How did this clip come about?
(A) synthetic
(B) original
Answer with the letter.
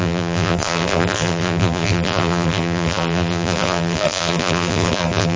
A